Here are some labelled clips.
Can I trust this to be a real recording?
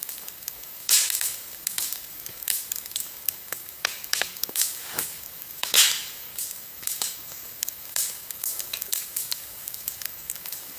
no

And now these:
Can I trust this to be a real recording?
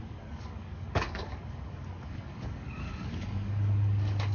no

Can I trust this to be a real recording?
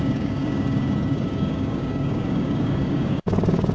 no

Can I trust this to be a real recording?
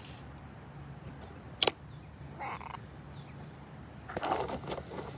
yes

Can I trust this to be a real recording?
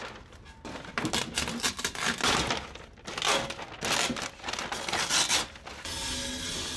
yes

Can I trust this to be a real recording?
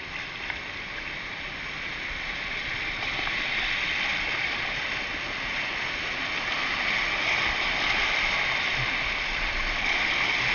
yes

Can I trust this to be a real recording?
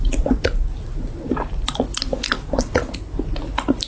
yes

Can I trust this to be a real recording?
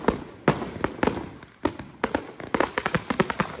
yes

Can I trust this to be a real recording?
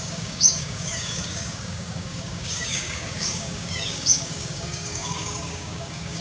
no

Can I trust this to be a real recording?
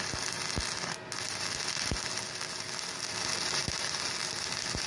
yes